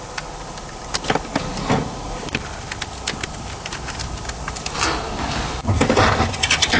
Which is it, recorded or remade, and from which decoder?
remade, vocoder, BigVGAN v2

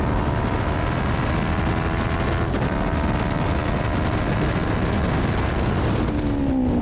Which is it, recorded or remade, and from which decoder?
recorded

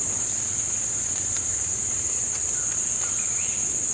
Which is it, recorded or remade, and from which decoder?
remade, vocoder, Vocos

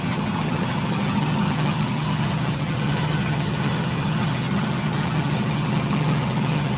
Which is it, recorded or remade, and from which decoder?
remade, vocoder, HiFi-GAN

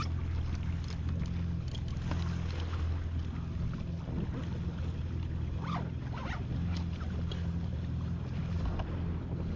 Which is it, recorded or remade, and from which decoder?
recorded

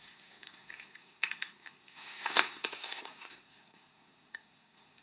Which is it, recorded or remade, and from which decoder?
remade, codec, SNAC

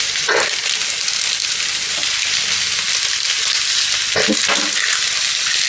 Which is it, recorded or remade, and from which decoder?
recorded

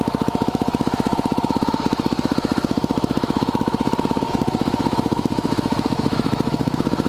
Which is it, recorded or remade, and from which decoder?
remade, autoencoder, DAC-VAE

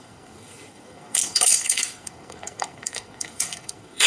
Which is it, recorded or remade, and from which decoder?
remade, codec, SNAC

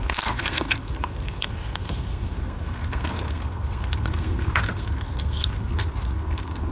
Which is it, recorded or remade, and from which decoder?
remade, codec, SNAC